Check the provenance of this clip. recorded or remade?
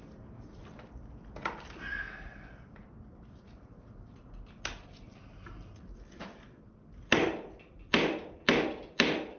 recorded